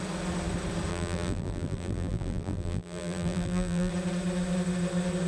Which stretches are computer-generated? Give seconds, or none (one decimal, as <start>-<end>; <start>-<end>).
0.9-3.9